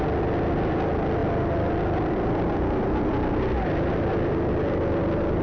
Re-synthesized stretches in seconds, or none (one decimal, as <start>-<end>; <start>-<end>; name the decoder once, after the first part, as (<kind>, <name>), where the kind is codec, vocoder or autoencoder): none